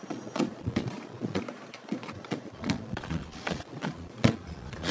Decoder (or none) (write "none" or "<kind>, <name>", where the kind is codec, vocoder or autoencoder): vocoder, Vocos